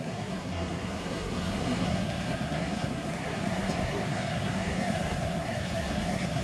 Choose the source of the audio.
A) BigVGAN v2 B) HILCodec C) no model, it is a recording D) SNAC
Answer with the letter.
D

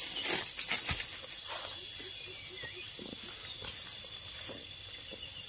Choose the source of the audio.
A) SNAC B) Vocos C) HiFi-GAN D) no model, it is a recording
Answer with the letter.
D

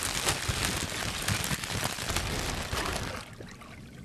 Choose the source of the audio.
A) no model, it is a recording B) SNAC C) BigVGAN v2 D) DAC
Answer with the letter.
A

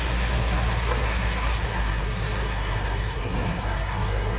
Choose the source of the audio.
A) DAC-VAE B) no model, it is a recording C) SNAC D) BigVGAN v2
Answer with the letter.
C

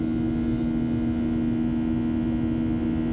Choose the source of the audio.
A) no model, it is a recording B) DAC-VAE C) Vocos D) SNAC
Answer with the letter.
A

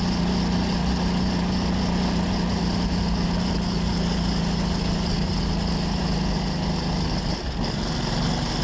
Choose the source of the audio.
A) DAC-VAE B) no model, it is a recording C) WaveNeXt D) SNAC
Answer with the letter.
B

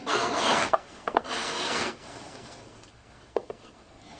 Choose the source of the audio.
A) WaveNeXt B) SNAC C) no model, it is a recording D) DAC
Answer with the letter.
B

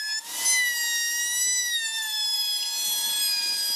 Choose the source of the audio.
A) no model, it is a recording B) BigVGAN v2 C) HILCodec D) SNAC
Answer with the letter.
A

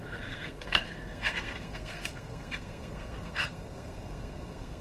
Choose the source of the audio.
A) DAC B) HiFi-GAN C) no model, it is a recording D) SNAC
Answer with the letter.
D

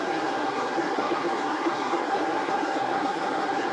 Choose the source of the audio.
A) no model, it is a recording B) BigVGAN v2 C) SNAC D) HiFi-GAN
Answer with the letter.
C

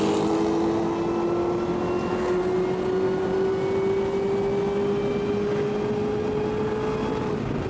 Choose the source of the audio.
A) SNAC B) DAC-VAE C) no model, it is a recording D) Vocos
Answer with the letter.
C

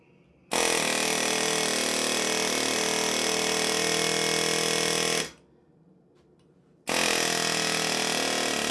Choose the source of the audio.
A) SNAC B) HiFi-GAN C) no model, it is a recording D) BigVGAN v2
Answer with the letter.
C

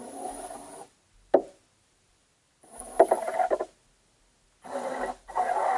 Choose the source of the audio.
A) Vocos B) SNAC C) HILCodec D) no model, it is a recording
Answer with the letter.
D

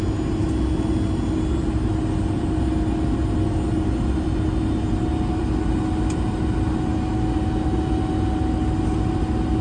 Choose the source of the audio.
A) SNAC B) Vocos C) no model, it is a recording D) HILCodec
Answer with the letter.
C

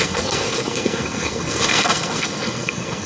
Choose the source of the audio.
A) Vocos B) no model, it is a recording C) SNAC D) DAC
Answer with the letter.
C